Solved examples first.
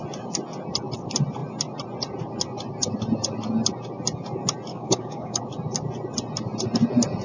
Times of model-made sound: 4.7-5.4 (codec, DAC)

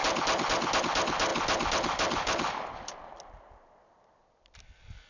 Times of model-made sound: none

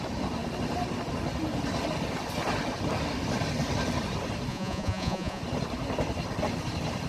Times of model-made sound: 4.5-5.4 (vocoder, Vocos)